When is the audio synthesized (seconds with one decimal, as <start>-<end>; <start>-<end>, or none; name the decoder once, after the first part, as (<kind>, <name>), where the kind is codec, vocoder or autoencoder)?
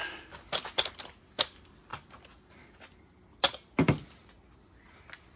none